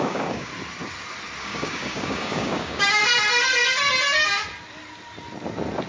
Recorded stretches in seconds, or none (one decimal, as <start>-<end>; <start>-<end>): 0.5-1.4; 3.0-5.9